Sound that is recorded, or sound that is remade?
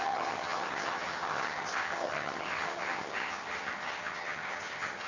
remade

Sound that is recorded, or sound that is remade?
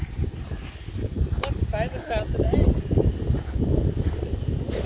recorded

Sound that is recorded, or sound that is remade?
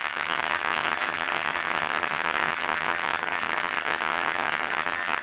remade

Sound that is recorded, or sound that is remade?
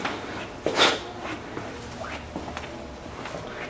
recorded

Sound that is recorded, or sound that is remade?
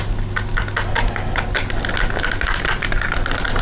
recorded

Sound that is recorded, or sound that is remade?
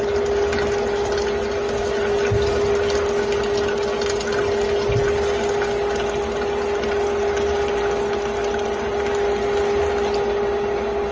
recorded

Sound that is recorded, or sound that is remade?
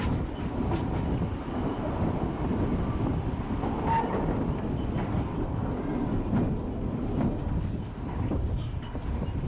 recorded